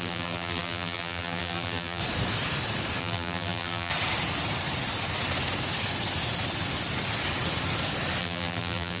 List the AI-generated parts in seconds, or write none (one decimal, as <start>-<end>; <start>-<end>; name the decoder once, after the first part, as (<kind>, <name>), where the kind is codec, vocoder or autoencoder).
0.0-2.0 (vocoder, BigVGAN v2); 3.0-3.9; 8.2-9.0